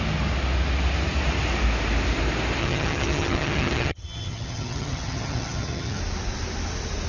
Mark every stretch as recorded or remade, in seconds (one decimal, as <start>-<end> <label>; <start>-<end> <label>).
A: 0.0-2.6 recorded; 2.6-6.0 remade; 6.0-7.1 recorded